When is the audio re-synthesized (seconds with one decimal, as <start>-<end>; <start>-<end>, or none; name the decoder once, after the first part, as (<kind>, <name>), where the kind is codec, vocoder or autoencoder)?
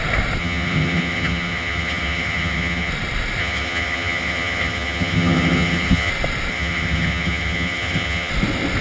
0.4-2.9 (vocoder, HiFi-GAN); 3.4-6.1; 6.5-8.3